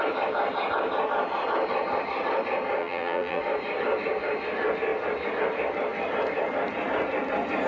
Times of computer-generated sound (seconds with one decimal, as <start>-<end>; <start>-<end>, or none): 2.8-3.4